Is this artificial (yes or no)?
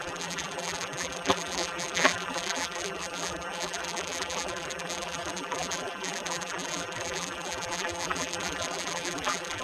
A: yes